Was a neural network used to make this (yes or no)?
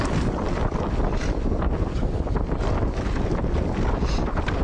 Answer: no